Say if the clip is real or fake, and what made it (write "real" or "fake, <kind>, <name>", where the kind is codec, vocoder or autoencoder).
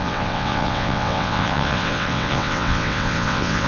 fake, vocoder, WaveNeXt